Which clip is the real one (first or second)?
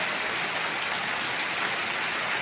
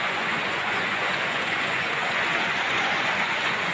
first